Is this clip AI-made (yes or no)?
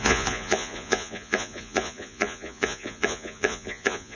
yes